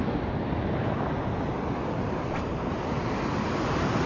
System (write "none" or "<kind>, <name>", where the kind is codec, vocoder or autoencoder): none